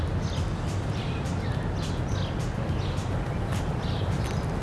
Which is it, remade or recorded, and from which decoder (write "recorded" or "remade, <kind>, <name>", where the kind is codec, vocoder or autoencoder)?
recorded